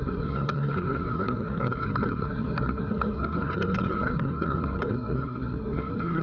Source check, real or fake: fake